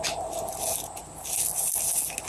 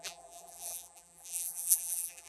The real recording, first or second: first